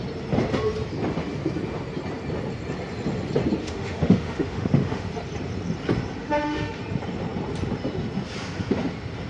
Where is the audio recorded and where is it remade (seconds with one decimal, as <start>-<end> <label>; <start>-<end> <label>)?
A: 0.0-3.6 recorded; 3.6-5.1 remade; 5.1-6.2 recorded; 6.2-6.8 remade; 6.8-9.3 recorded